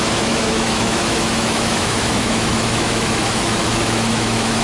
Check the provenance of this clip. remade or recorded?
remade